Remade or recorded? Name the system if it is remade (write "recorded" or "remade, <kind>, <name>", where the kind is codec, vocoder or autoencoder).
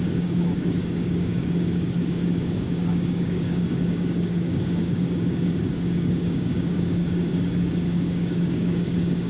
remade, codec, DAC